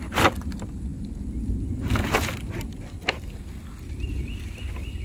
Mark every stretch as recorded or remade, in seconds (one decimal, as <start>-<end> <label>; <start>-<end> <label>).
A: 0.0-0.9 remade; 0.9-3.9 recorded; 3.9-5.0 remade